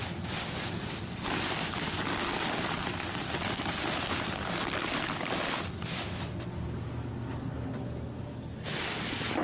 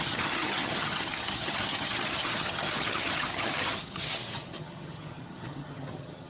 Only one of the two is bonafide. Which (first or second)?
first